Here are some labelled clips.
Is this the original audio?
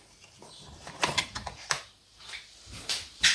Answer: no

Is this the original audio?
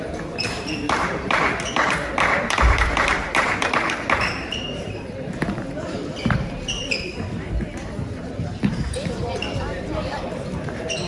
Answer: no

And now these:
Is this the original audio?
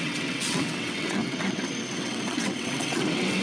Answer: no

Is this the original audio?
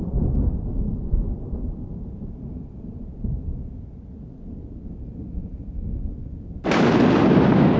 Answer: no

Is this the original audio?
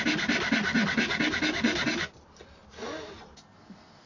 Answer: yes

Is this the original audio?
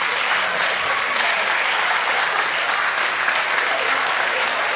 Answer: yes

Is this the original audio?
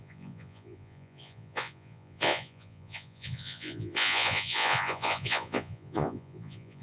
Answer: no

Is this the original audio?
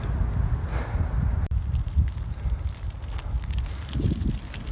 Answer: yes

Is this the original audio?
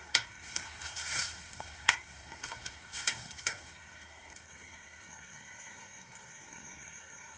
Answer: no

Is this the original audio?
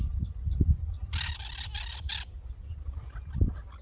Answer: yes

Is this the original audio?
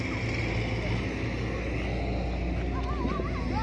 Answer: yes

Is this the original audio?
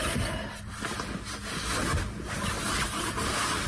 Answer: yes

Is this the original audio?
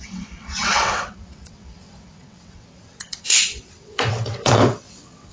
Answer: no